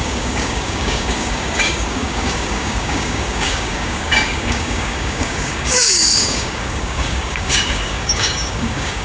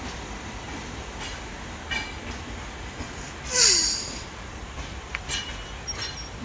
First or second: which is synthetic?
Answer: first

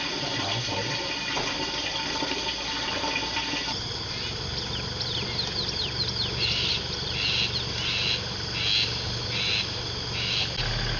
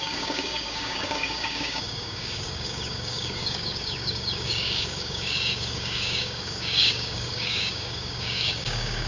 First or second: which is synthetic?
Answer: second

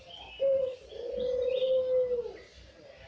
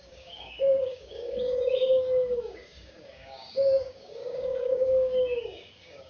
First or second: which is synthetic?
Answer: second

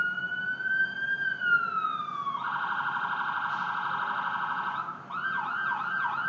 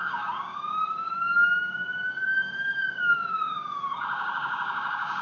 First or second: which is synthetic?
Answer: second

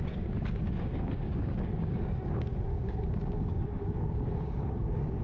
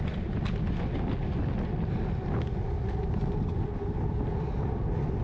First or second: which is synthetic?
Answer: first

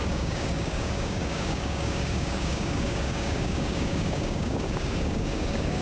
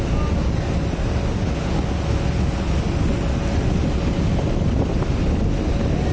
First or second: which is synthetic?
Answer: first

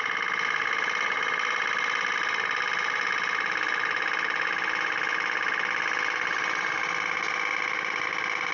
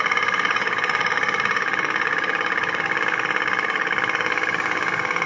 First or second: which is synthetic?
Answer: second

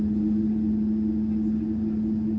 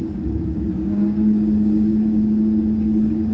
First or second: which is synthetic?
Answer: second